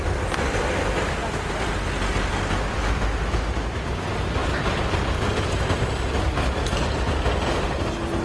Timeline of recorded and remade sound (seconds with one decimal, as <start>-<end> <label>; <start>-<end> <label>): 0.0-8.2 recorded